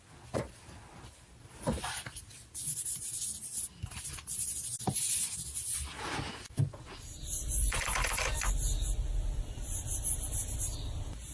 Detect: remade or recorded remade